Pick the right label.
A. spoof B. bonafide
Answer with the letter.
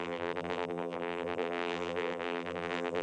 A